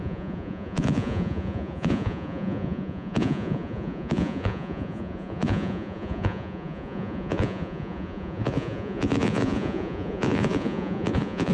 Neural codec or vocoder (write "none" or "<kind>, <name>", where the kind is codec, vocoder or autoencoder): vocoder, Vocos